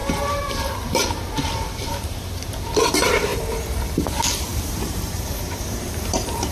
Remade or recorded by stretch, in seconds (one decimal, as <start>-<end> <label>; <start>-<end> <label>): 0.0-3.3 remade; 3.3-3.9 recorded; 3.9-6.5 remade